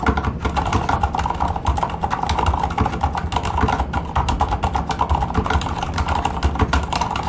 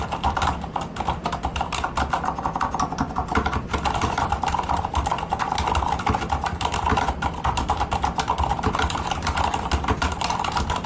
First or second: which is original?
first